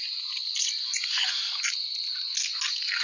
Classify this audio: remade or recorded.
recorded